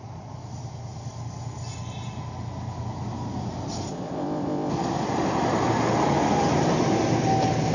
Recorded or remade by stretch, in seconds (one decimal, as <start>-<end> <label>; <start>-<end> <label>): 0.0-3.9 recorded; 3.9-4.7 remade; 4.7-7.7 recorded